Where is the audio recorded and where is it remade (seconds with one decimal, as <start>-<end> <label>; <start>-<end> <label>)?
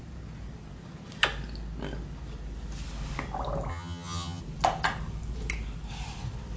0.0-3.7 recorded; 3.7-4.4 remade; 4.4-6.6 recorded